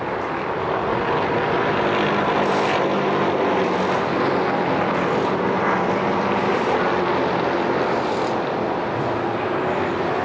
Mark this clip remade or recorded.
recorded